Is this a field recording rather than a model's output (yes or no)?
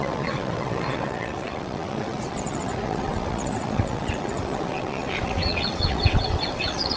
no